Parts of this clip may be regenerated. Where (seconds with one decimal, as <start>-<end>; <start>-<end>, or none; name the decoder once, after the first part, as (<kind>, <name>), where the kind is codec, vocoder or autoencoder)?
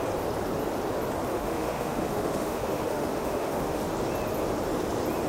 1.3-3.8 (autoencoder, DAC-VAE)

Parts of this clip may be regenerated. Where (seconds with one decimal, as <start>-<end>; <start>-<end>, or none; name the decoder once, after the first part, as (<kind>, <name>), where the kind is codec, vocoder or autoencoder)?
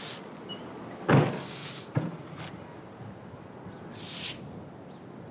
1.6-2.4 (vocoder, Vocos)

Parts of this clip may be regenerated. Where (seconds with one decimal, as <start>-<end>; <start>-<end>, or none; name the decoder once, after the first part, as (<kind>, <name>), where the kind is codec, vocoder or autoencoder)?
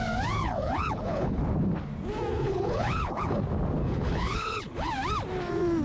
0.4-1.4 (codec, HILCodec); 2.3-3.4; 3.8-4.9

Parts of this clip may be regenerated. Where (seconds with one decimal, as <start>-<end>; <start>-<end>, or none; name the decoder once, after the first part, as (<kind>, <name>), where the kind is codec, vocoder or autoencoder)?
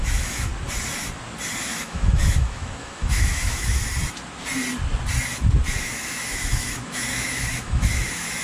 0.0-0.5 (autoencoder, DAC-VAE); 1.6-3.8; 5.8-8.4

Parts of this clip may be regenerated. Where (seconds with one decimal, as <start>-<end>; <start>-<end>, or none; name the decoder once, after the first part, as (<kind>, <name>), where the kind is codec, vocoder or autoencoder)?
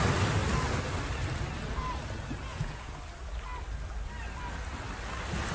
2.5-3.0 (vocoder, Vocos)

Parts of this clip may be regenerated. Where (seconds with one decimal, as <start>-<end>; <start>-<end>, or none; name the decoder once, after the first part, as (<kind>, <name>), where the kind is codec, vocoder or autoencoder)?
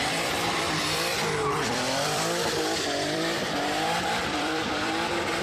0.0-1.1 (vocoder, BigVGAN v2); 1.6-3.4; 4.1-5.4